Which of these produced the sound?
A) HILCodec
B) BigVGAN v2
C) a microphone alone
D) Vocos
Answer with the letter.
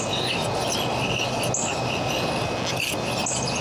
C